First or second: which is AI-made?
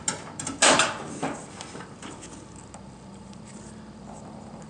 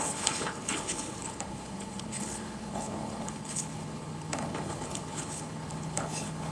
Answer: second